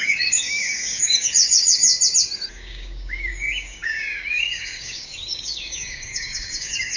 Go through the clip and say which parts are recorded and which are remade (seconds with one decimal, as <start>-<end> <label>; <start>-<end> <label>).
0.0-1.9 remade; 1.9-2.5 recorded; 2.5-7.0 remade